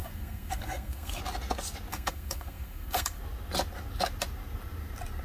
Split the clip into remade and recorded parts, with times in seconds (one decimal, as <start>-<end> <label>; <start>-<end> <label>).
0.0-1.2 remade; 1.2-1.9 recorded; 1.9-3.2 remade; 3.2-5.2 recorded